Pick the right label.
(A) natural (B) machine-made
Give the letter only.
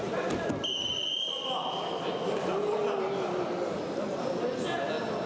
A